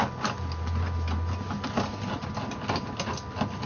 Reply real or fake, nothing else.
real